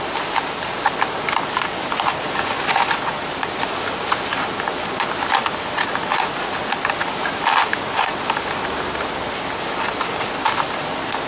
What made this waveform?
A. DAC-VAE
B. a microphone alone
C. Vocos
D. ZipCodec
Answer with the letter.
B